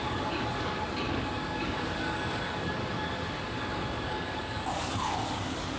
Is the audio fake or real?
fake